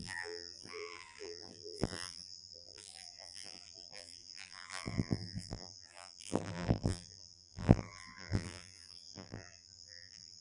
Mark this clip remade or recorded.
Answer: remade